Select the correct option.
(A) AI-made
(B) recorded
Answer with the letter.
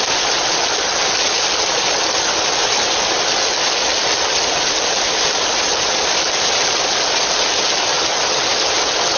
B